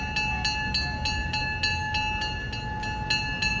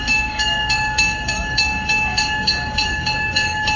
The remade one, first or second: second